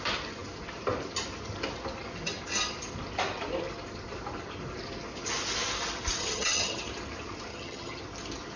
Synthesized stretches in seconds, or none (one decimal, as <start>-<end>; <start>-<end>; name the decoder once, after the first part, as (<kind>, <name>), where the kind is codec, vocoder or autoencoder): 6.2-6.8 (vocoder, HiFi-GAN); 7.5-8.0